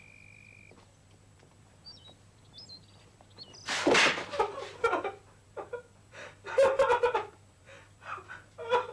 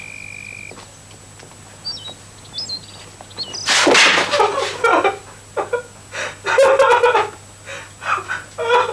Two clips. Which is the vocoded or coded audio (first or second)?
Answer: first